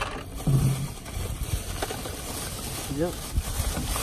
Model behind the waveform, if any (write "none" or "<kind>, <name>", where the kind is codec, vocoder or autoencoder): none